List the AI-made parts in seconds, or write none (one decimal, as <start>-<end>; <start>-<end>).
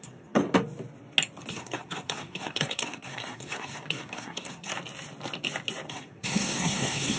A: 0.0-0.4; 1.5-4.7; 5.9-7.2